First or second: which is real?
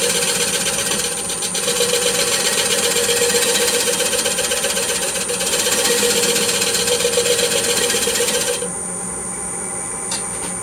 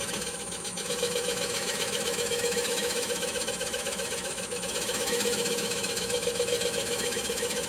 first